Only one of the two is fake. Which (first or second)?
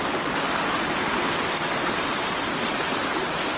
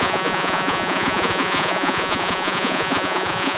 second